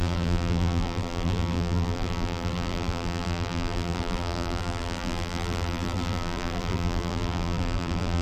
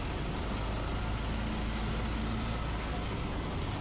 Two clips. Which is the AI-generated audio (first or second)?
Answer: first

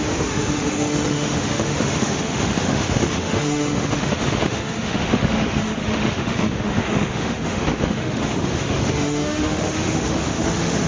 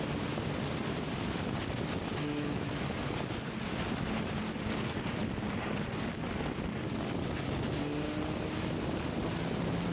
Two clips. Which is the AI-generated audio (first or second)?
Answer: first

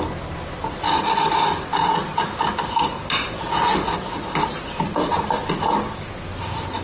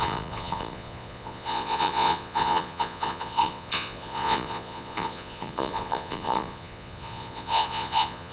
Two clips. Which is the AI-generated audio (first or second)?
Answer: second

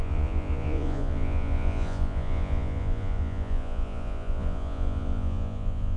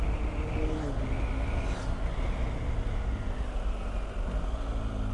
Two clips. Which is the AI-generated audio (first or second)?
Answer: first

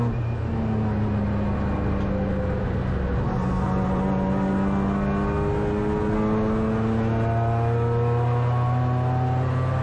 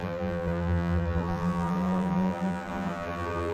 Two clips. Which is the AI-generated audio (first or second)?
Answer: second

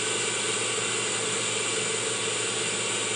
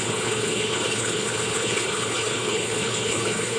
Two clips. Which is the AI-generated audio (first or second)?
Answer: second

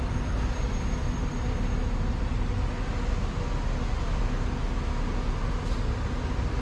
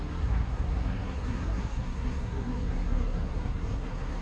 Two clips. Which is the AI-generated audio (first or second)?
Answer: second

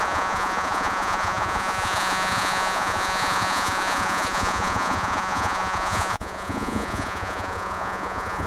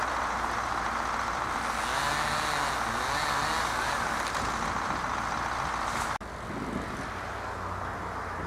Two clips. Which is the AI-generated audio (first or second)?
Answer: first